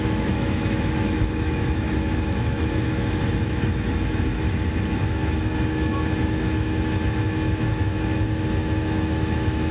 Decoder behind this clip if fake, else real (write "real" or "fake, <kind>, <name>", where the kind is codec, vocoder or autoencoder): fake, autoencoder, DAC-VAE